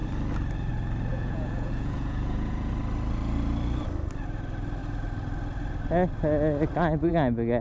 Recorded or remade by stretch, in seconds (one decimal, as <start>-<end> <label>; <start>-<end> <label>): 0.0-1.1 recorded; 1.1-2.7 remade; 2.7-7.6 recorded